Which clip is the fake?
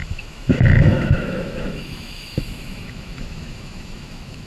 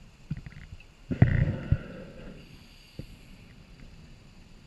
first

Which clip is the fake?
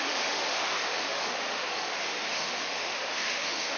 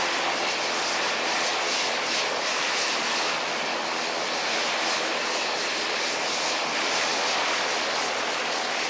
first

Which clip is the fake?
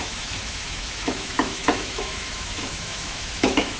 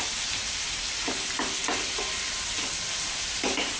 first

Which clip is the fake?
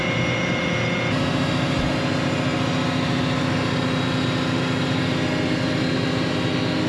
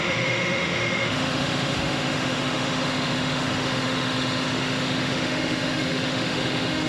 second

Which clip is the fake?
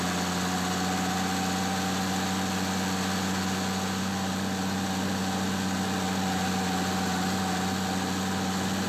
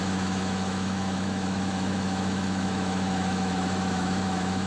second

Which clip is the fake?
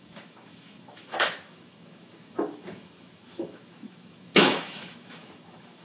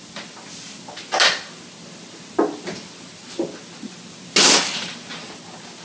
first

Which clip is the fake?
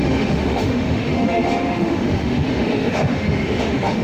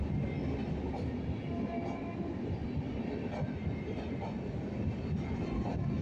first